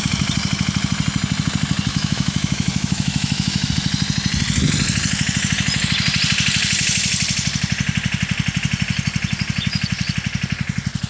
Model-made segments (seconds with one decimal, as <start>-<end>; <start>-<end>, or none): 1.9-3.7